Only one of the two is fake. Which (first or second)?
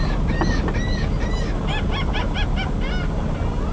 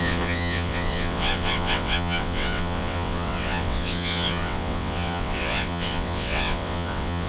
second